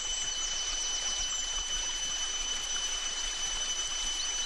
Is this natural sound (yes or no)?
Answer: no